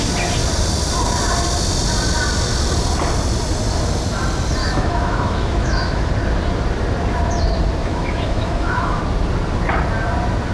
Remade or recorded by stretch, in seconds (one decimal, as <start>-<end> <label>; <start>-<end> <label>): 0.0-4.6 recorded; 4.6-6.1 remade; 6.1-7.8 recorded; 7.8-9.0 remade; 9.0-10.5 recorded